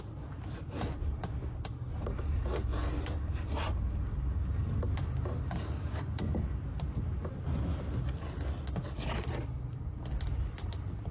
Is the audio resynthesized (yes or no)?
no